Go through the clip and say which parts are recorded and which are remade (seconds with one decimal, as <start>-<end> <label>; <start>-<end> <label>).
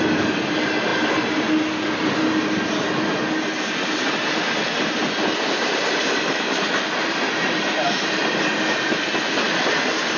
0.0-10.2 recorded